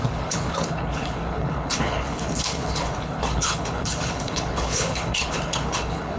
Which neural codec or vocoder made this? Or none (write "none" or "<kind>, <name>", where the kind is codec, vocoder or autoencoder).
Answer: codec, HILCodec